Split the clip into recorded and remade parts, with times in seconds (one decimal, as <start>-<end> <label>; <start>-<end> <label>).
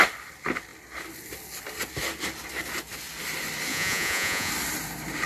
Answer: 0.0-3.7 recorded; 3.7-4.5 remade; 4.5-5.3 recorded